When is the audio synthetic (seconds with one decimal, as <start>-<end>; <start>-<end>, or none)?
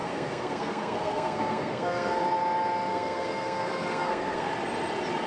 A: 0.0-2.2; 2.9-4.5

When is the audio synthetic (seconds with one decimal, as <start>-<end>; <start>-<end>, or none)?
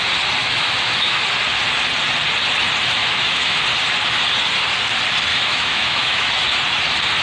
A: 0.4-1.2; 3.0-3.6; 5.3-6.3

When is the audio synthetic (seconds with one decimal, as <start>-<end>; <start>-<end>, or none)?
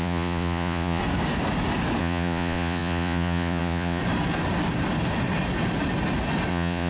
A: 0.0-1.0; 2.0-4.0; 6.5-6.9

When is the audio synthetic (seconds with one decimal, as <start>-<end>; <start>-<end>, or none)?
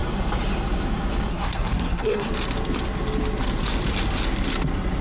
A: 1.3-2.3